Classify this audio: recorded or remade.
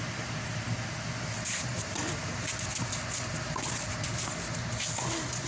recorded